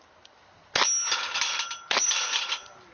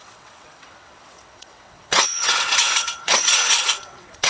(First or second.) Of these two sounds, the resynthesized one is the second